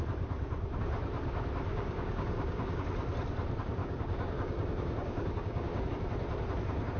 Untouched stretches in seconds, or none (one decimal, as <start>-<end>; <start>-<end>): 0.0-1.7; 2.8-3.8; 5.9-7.0